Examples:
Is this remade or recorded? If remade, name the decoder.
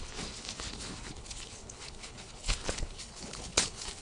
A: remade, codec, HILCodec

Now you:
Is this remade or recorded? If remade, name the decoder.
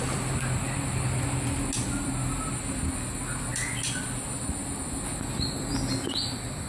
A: recorded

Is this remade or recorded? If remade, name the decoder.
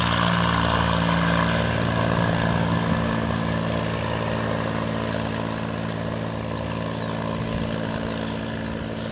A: recorded